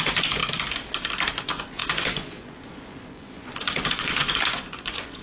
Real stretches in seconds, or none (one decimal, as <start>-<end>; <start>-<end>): 0.4-1.4